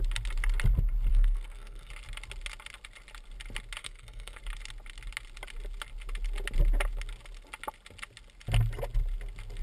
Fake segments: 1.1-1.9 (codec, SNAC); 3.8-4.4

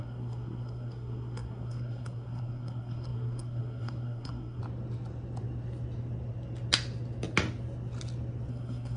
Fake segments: 0.0-4.6 (codec, SNAC); 8.5-9.0

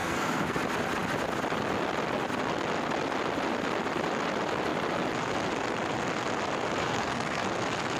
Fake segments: 0.0-0.6 (codec, SNAC); 6.8-7.4

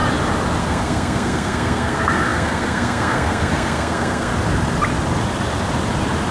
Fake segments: 0.6-4.3 (codec, SNAC)